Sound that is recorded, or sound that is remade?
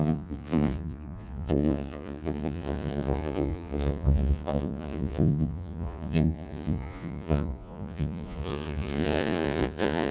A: remade